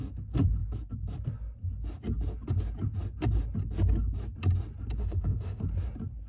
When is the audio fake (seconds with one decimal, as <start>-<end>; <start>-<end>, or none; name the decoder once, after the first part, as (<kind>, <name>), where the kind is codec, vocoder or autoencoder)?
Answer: 5.0-5.6 (autoencoder, DAC-VAE)